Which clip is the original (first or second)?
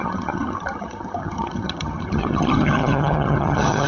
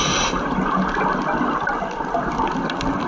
second